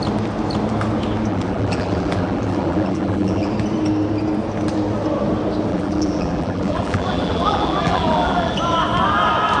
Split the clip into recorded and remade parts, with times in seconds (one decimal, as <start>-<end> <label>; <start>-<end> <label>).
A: 0.0-1.3 recorded; 1.3-3.5 remade; 3.5-5.7 recorded; 5.7-8.5 remade; 8.5-9.6 recorded